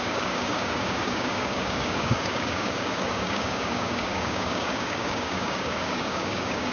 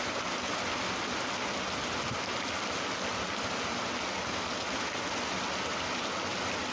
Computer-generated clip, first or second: first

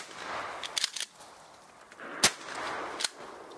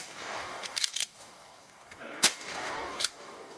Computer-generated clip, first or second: second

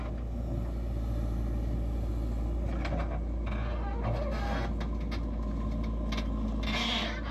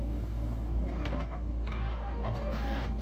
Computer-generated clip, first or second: second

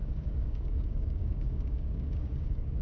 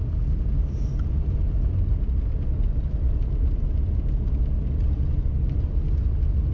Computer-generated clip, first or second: first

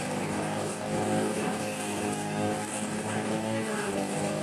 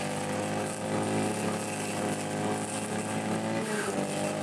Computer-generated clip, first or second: first